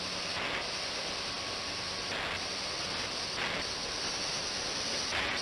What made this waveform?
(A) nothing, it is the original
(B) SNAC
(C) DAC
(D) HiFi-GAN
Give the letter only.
A